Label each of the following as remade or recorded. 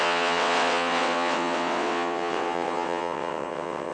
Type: remade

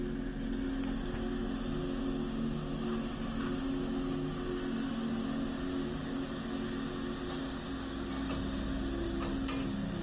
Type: recorded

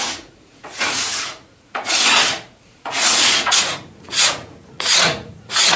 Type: remade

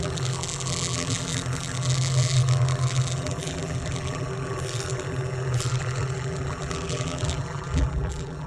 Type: remade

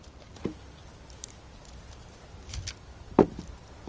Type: recorded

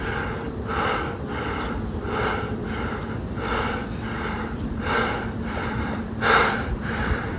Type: remade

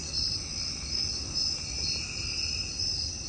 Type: recorded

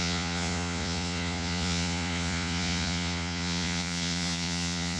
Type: remade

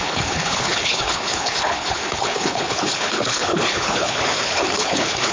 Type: remade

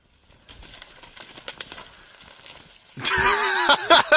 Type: recorded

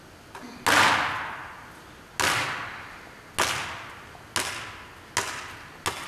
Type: recorded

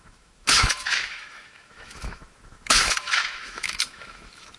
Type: remade